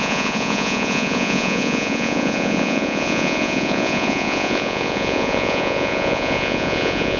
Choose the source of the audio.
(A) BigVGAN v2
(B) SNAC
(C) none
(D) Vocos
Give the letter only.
D